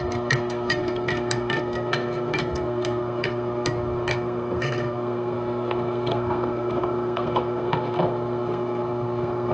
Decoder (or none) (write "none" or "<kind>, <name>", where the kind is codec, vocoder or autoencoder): codec, SNAC